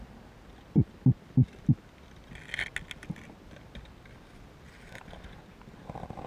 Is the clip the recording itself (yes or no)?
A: yes